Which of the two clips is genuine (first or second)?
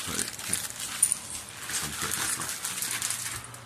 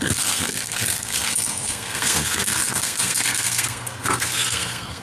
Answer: first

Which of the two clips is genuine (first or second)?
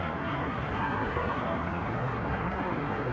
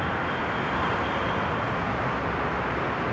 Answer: second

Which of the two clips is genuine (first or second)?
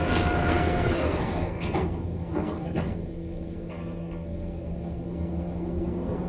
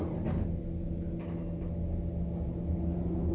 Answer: second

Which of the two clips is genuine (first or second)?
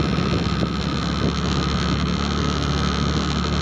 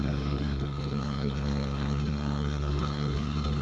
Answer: first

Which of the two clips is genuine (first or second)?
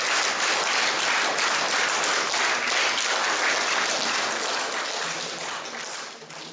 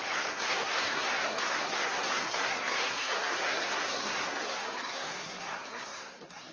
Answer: first